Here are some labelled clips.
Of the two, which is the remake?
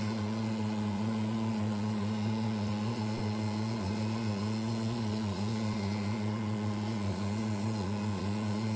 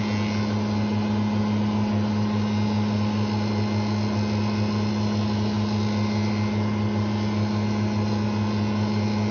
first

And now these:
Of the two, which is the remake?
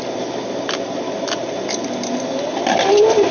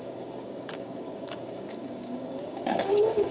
second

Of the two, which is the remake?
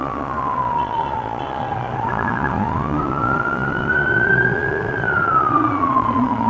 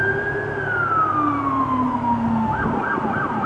first